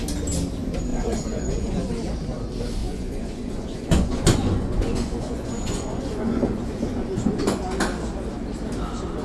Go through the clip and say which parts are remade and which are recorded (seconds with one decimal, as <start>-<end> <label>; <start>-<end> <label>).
0.0-0.9 recorded; 0.9-1.9 remade; 1.9-2.8 recorded; 2.8-7.6 remade; 7.6-9.2 recorded